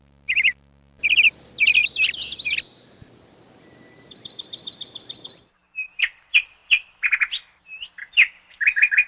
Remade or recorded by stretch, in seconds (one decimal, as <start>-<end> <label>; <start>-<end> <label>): 0.0-5.6 remade; 5.6-6.1 recorded; 6.1-9.1 remade